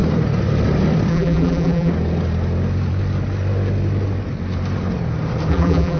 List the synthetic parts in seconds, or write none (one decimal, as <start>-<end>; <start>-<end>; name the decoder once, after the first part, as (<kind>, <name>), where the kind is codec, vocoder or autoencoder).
1.1-1.9 (vocoder, BigVGAN v2); 5.5-6.0